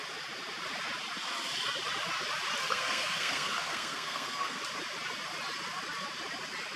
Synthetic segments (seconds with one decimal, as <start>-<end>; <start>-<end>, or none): 2.6-4.6